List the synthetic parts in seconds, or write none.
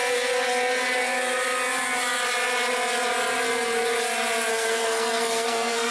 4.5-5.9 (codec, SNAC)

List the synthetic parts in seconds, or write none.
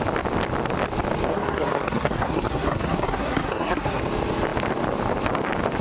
1.3-4.0 (codec, SNAC)